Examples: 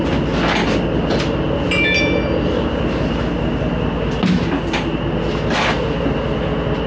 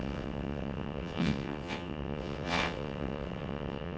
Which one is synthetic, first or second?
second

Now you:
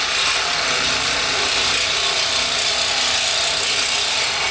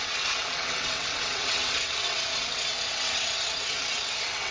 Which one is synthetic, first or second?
second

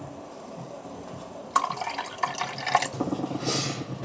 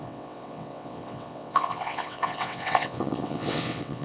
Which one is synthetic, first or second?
second